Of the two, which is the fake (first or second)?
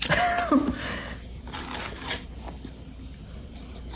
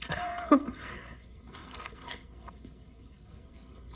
second